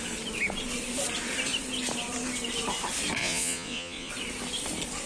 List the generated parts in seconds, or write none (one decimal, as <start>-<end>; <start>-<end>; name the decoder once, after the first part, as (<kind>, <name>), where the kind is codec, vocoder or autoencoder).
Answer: 3.2-4.1 (vocoder, Vocos)